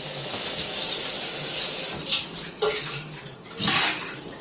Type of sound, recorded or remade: recorded